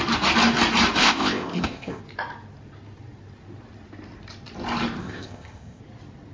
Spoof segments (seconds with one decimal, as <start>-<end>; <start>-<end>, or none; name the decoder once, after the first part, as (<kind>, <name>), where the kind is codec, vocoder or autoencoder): 1.0-2.0 (codec, ZipCodec); 5.0-5.8